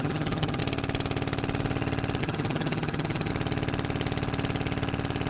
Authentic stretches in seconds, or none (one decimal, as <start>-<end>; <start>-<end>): 0.6-2.2; 3.3-5.3